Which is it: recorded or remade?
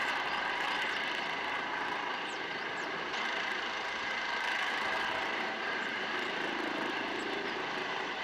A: remade